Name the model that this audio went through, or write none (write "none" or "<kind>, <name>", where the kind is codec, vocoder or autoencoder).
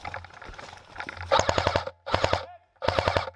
none